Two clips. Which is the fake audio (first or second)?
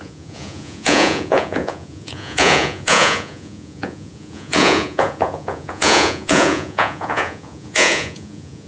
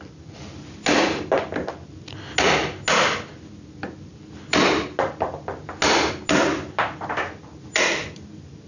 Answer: first